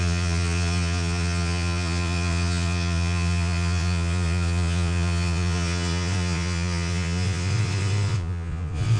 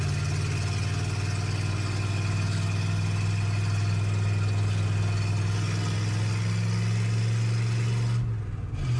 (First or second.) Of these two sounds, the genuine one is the second